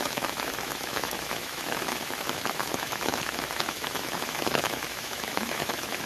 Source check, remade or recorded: remade